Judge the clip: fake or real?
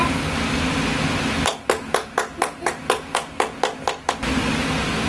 real